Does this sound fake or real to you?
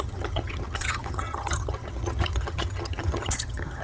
fake